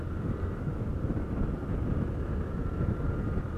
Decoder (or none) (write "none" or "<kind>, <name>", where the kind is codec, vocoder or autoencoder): none